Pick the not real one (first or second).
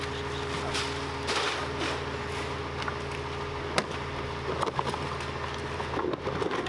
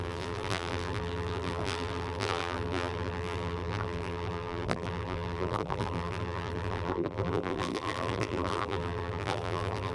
second